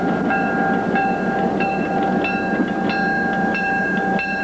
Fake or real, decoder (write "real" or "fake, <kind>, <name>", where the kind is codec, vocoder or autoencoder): real